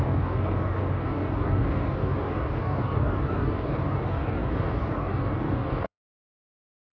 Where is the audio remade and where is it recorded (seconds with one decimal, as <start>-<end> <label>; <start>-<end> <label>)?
0.0-6.9 remade